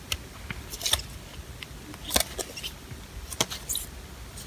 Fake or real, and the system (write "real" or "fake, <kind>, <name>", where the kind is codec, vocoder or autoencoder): real